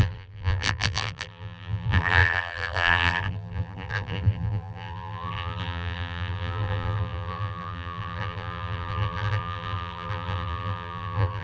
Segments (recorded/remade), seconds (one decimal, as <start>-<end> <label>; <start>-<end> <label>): 0.0-11.4 remade